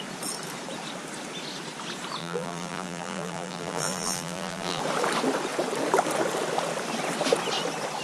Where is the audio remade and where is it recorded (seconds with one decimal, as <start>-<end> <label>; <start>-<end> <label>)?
0.0-2.2 recorded; 2.2-4.8 remade; 4.8-8.0 recorded